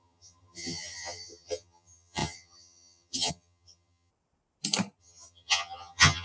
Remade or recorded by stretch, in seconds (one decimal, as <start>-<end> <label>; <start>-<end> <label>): 0.0-4.1 remade; 4.1-5.0 recorded; 5.0-6.2 remade